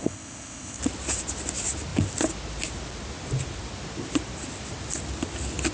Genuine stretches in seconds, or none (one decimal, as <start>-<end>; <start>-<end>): 0.8-5.7

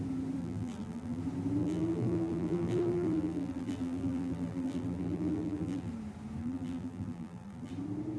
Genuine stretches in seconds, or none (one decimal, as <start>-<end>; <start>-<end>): 0.0-0.4; 1.2-1.6; 5.9-6.4; 7.7-8.2

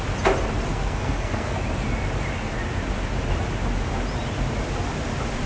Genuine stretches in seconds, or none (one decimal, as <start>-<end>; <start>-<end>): 0.0-0.7; 1.6-5.5